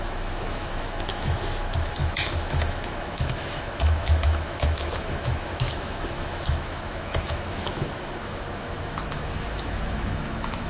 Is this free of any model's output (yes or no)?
no